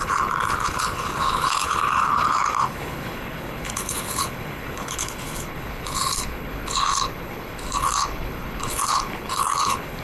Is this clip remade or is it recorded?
remade